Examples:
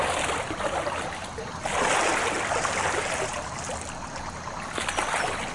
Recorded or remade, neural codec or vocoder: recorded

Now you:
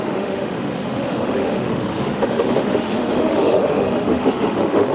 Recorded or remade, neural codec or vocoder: remade, autoencoder, DAC-VAE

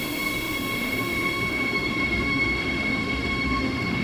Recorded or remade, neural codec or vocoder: remade, autoencoder, DAC-VAE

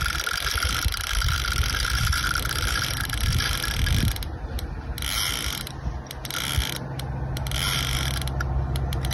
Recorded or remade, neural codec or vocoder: recorded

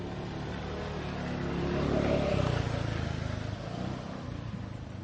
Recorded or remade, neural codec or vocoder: recorded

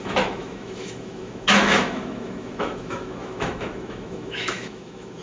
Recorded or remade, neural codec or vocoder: remade, autoencoder, DAC-VAE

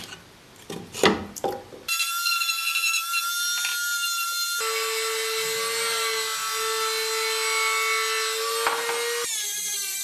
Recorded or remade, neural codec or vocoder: recorded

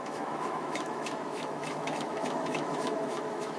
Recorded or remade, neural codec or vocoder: remade, autoencoder, DAC-VAE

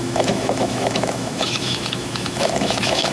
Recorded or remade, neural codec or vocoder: remade, autoencoder, DAC-VAE